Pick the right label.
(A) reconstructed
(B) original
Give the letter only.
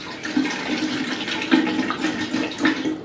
B